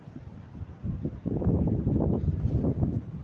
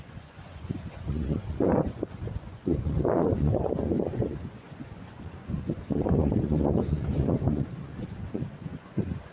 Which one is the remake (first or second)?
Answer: second